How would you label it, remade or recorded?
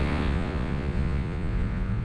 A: remade